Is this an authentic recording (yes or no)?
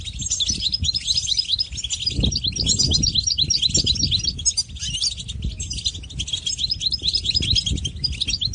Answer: yes